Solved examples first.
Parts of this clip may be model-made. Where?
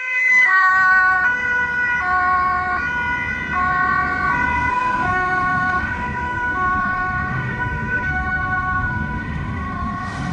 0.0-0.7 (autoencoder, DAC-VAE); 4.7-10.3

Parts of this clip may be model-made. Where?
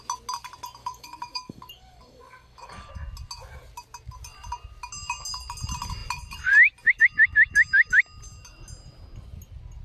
0.8-2.9 (codec, DAC)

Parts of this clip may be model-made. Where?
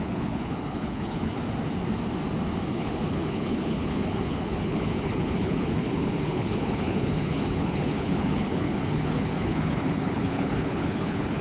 0.0-1.4 (codec, HILCodec); 2.7-11.4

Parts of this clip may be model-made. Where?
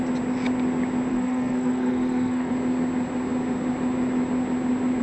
1.1-2.5 (codec, SNAC)